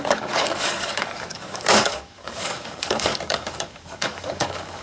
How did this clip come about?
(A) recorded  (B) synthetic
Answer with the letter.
B